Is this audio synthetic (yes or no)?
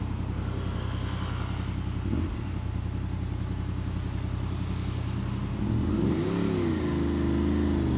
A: no